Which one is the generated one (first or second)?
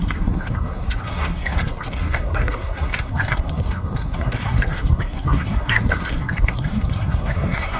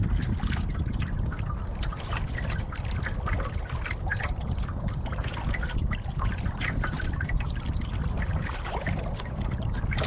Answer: first